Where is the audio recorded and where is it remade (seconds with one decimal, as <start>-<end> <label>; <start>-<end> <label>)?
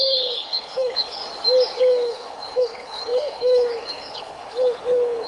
0.0-1.2 remade; 1.2-1.8 recorded; 1.8-5.3 remade